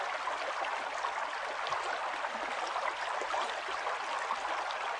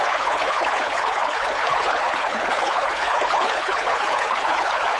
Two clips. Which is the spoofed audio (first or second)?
second